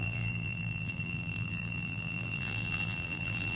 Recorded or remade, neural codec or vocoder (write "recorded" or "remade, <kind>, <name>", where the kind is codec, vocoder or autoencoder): remade, vocoder, BigVGAN v2